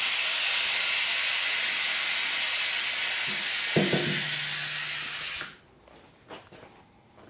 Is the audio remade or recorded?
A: recorded